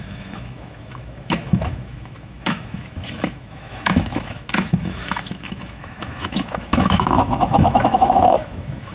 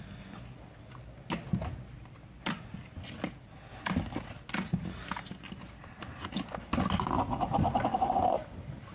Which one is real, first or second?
second